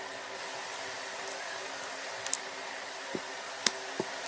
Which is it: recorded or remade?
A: recorded